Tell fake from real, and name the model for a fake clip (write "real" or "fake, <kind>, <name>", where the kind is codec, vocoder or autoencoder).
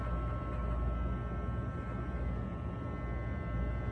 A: real